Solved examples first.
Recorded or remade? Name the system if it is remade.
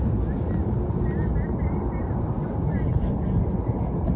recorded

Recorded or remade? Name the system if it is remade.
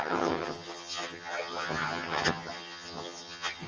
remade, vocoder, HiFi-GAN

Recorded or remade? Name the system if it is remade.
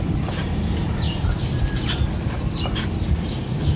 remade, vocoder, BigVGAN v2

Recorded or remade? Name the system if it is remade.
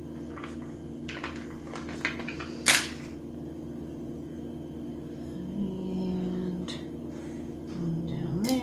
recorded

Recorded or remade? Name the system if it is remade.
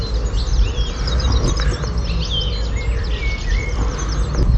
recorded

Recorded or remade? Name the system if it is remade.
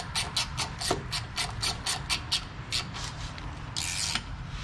recorded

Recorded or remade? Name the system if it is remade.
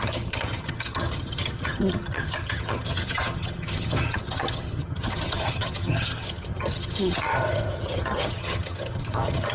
remade, vocoder, HiFi-GAN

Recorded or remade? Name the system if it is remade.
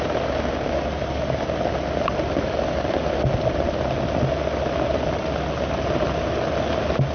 recorded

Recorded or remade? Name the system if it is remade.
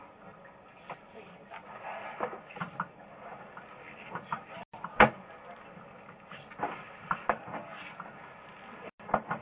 recorded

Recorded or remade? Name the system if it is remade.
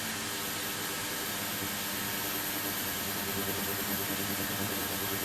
recorded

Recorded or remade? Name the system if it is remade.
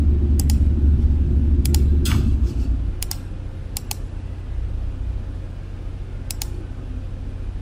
recorded